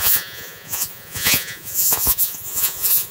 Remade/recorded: remade